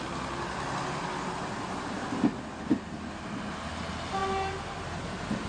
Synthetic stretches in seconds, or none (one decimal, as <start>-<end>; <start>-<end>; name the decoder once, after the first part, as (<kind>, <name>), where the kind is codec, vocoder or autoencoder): none

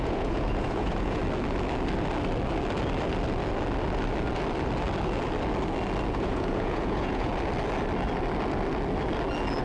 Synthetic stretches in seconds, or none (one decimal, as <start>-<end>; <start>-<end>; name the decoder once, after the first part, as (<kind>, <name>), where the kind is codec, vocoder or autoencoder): 0.0-1.2 (vocoder, Vocos); 6.1-7.3

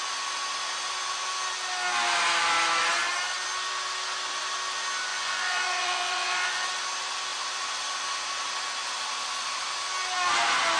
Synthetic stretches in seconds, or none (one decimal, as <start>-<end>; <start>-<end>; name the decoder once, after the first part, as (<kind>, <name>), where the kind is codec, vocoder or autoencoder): 5.1-6.7 (vocoder, Vocos)